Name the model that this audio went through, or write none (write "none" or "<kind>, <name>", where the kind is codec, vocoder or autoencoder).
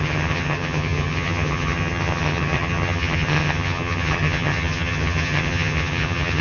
vocoder, HiFi-GAN